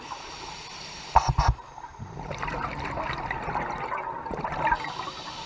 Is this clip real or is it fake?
real